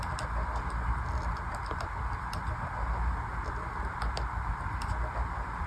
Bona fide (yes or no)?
yes